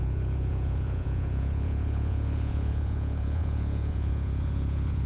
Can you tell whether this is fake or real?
fake